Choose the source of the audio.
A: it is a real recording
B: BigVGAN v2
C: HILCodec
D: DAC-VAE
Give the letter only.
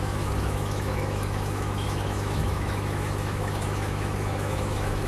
D